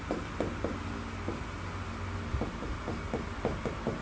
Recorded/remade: recorded